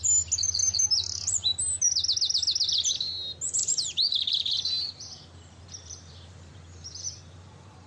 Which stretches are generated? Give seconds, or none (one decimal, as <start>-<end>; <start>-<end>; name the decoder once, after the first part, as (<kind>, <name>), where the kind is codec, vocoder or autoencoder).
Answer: 3.6-7.9 (vocoder, BigVGAN v2)